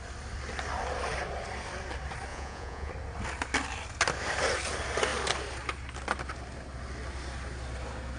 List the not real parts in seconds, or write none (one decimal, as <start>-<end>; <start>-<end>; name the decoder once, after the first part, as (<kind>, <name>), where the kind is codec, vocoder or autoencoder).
2.3-2.9 (vocoder, Vocos)